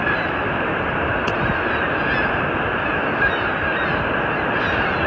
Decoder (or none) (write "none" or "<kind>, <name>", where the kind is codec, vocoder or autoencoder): none